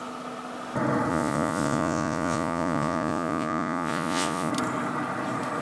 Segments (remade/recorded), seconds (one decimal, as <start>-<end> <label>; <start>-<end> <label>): 0.0-1.1 recorded; 1.1-4.5 remade; 4.5-5.6 recorded